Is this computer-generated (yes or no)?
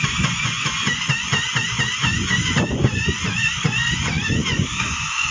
yes